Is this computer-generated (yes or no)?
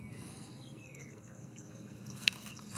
yes